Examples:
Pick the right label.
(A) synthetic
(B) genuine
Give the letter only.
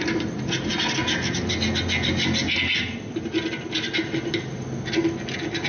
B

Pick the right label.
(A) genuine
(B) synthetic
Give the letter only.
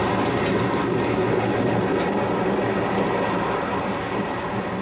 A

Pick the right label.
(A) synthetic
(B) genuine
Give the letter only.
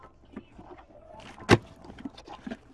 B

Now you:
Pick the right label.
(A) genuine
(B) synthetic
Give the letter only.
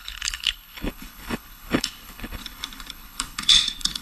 B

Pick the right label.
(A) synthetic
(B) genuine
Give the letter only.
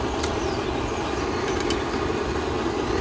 B